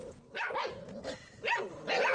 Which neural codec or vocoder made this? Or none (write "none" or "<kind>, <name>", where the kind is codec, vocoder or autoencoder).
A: none